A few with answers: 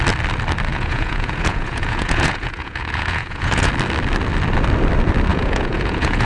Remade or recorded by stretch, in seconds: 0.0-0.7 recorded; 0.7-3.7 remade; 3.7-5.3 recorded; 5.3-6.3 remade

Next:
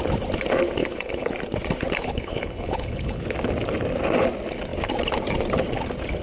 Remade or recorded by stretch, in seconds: 0.0-0.8 recorded; 0.8-1.3 remade; 1.3-2.0 recorded; 2.0-3.2 remade; 3.2-6.2 recorded

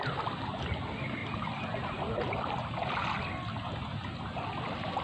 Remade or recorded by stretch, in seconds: 0.0-5.0 recorded

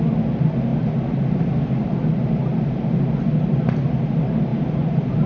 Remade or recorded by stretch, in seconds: 0.0-4.5 recorded; 4.5-5.3 remade

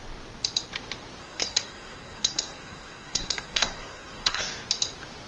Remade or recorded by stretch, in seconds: 0.0-1.2 recorded; 1.2-4.4 remade; 4.4-5.3 recorded

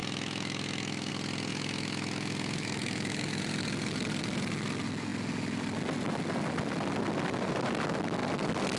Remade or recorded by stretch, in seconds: 0.0-1.1 remade; 1.1-1.5 recorded; 1.5-3.4 remade; 3.4-8.8 recorded

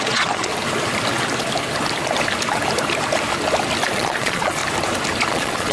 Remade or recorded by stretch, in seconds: 0.0-0.5 remade; 0.5-3.9 recorded; 3.9-4.6 remade; 4.6-5.3 recorded; 5.3-5.7 remade

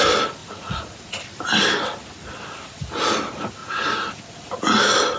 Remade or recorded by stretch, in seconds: 0.0-0.4 recorded; 0.4-1.2 remade; 1.2-3.6 recorded; 3.6-4.2 remade; 4.2-5.2 recorded